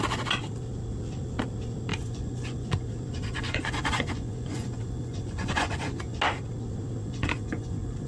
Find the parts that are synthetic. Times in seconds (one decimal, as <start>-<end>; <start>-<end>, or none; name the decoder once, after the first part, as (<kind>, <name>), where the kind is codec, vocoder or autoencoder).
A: 1.9-6.2 (vocoder, Vocos); 7.0-8.1